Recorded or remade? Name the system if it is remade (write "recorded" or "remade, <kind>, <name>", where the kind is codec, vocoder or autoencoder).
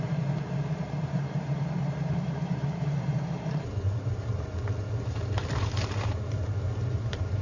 remade, vocoder, BigVGAN v2